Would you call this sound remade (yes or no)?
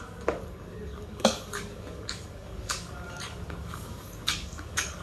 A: yes